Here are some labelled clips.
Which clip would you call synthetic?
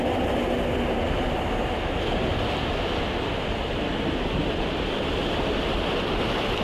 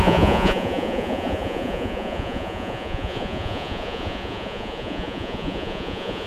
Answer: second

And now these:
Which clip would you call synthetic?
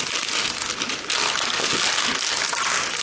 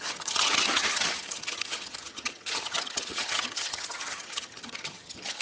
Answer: second